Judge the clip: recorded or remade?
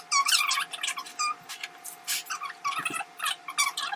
recorded